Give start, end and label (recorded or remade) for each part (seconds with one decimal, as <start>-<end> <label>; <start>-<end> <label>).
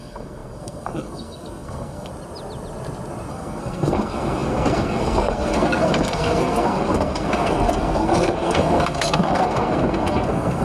0.0-2.1 remade; 2.1-3.3 recorded; 3.3-10.6 remade